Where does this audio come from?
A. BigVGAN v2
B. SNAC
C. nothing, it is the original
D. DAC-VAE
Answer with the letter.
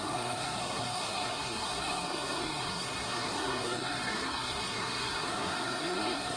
B